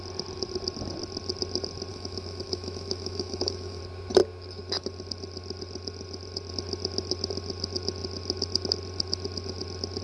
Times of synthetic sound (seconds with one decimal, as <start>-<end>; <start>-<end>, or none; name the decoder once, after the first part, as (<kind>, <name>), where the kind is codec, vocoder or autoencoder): 1.9-3.8 (autoencoder, DAC-VAE)